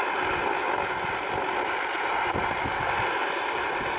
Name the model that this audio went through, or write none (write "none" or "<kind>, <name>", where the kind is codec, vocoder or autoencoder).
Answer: vocoder, BigVGAN v2